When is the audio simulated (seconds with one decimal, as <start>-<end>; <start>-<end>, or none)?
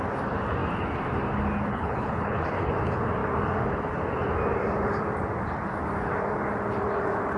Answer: 1.7-2.7